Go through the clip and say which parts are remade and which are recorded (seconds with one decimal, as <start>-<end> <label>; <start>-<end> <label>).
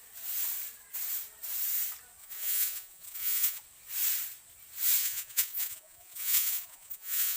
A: 0.0-2.2 recorded; 2.2-3.6 remade; 3.6-5.0 recorded; 5.0-7.4 remade